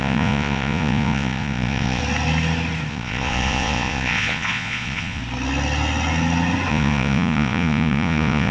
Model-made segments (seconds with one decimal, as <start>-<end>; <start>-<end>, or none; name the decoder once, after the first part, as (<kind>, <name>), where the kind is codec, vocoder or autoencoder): 0.0-2.0 (vocoder, Vocos); 2.9-5.2; 6.7-8.5